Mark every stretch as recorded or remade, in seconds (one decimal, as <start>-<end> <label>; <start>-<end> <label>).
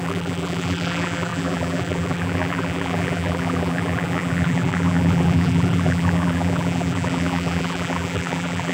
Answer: 0.0-8.7 remade